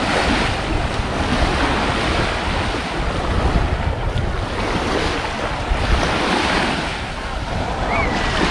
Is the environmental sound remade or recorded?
recorded